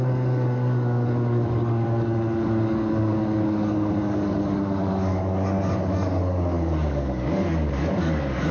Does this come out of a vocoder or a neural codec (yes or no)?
yes